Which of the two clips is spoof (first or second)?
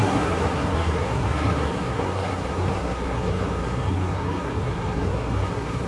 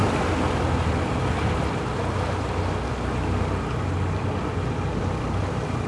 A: first